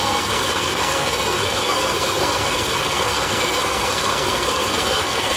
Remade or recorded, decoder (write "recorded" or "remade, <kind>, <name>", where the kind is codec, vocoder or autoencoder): remade, codec, SNAC